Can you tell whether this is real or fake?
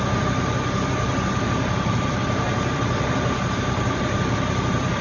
fake